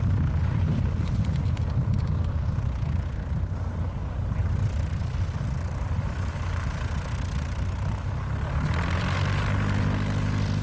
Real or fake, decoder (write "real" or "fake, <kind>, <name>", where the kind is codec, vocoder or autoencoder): real